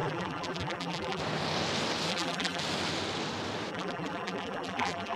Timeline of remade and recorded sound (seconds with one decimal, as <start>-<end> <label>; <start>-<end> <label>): 0.0-1.2 remade; 1.2-2.1 recorded; 2.1-2.6 remade; 2.6-3.7 recorded; 3.7-5.2 remade